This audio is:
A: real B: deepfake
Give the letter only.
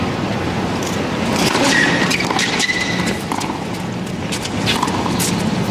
A